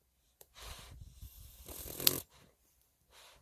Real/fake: fake